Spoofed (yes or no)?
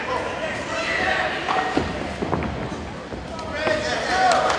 no